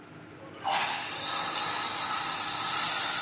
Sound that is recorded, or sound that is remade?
recorded